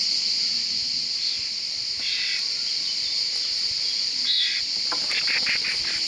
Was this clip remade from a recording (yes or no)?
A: no